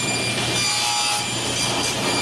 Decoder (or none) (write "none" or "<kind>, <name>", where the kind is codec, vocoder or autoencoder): none